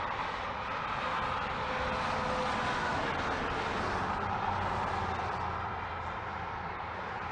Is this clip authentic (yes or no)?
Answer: yes